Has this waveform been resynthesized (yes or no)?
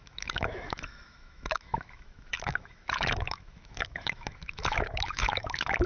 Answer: yes